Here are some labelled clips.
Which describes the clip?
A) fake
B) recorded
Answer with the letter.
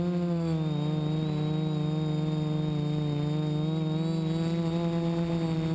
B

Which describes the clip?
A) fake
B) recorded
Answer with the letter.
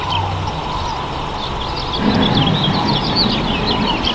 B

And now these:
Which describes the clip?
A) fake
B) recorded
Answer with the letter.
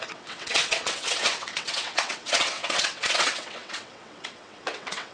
A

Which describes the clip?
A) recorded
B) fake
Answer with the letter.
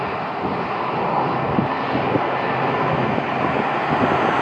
A